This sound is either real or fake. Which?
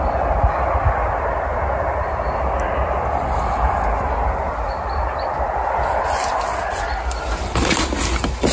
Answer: real